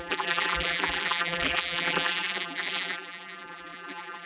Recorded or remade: remade